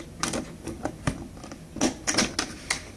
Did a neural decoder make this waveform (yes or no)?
no